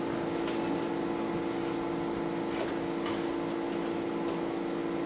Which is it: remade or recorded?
recorded